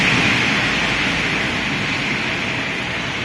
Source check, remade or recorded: recorded